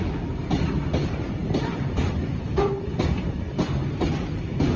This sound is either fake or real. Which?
real